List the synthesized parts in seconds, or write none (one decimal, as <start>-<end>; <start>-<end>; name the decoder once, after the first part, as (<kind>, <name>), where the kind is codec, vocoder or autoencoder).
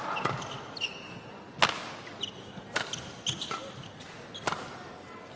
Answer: none